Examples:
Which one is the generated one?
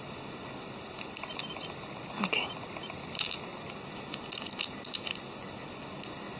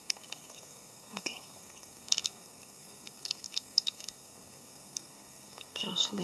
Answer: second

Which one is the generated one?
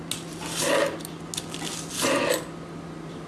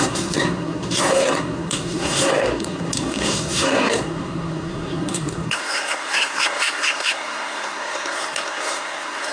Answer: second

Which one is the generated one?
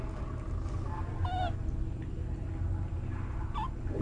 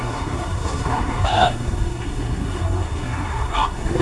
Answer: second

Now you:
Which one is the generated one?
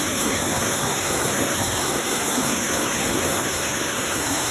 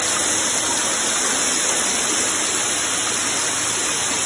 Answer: first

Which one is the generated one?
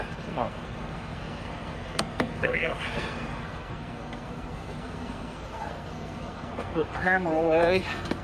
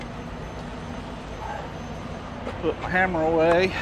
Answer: first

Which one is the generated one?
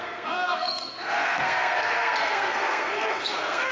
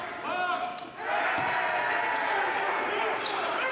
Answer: first